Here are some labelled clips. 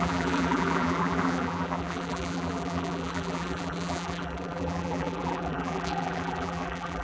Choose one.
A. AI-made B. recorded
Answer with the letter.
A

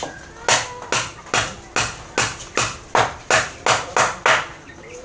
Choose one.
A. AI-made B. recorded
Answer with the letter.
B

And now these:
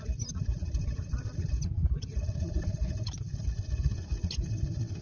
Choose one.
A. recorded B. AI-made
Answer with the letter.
B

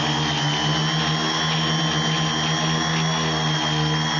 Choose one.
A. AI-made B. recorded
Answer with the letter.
B